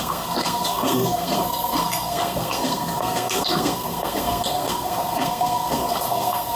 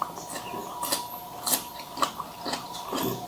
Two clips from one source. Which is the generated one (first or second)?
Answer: first